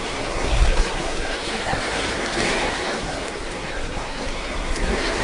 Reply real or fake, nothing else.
fake